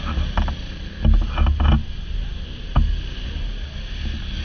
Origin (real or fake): real